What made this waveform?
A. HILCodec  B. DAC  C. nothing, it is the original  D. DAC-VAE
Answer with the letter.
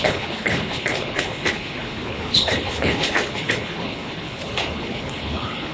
A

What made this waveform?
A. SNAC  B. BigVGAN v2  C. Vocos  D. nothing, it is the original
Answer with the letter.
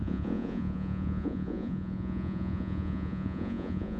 C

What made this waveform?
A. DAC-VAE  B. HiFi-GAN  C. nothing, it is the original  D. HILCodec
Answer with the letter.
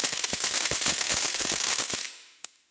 A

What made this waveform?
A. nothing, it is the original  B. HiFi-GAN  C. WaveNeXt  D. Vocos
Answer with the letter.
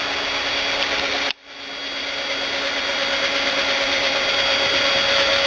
A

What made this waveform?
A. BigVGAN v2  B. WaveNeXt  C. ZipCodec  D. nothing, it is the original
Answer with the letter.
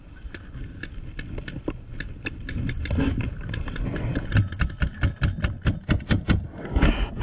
D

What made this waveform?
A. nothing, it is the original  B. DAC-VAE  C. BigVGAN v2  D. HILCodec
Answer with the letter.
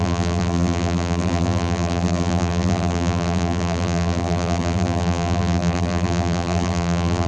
C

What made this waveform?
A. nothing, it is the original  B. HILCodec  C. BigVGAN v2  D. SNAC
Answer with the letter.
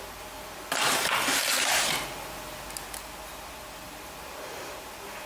A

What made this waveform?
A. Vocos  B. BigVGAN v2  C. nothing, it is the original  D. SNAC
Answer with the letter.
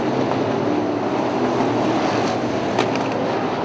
C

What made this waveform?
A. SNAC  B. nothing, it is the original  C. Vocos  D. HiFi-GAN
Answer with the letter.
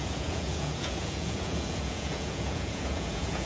C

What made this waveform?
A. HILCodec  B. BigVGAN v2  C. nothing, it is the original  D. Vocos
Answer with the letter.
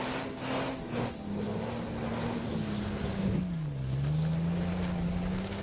C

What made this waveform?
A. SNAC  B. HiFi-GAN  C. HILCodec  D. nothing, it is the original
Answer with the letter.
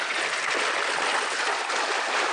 D